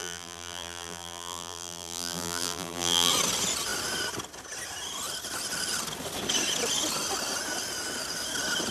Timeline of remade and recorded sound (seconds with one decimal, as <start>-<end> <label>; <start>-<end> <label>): 0.0-3.1 remade; 3.1-8.7 recorded